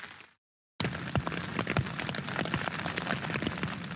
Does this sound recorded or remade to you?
recorded